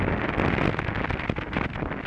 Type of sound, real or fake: real